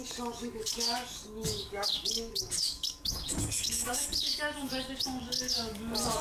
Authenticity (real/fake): fake